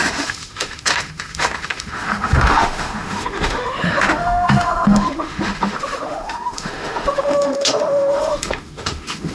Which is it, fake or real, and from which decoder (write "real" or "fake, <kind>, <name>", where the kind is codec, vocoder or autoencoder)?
fake, autoencoder, DAC-VAE